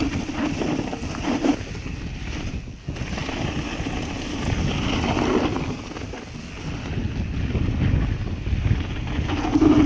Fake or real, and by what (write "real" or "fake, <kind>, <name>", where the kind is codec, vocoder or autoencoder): real